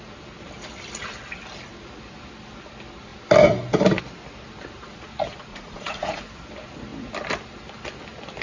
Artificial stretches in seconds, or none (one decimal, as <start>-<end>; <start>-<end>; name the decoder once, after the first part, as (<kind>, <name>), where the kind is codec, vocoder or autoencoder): 5.5-6.2 (vocoder, Vocos)